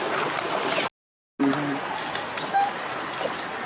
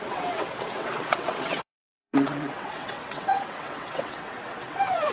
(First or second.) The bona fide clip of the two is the first